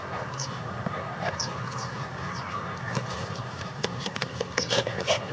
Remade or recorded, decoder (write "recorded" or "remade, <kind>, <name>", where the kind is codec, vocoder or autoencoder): remade, codec, SNAC